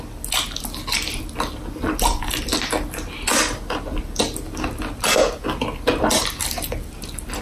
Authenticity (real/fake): real